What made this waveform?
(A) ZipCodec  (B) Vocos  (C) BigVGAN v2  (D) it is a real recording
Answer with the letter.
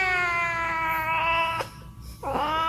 D